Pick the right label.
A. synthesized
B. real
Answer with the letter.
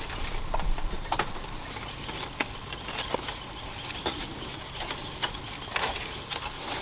B